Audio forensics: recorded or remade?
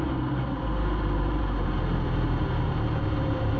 remade